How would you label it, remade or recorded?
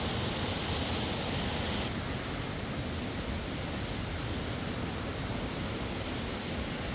recorded